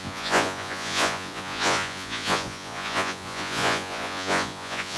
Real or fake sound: fake